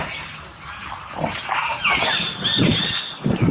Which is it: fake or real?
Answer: real